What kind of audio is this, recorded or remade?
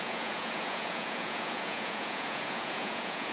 remade